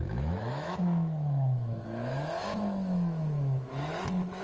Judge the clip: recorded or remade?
remade